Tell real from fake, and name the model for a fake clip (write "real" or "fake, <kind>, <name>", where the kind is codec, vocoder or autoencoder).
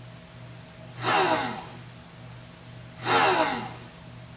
real